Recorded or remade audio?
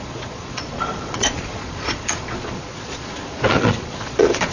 remade